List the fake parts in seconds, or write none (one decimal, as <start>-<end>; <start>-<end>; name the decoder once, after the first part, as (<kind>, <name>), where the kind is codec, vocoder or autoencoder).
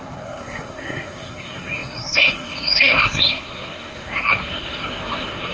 0.0-5.5 (codec, SNAC)